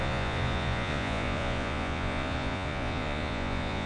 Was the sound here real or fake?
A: fake